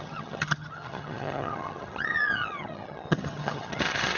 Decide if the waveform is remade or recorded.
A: remade